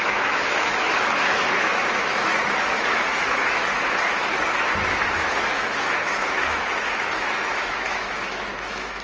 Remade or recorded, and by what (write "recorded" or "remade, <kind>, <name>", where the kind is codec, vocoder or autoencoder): remade, autoencoder, DAC-VAE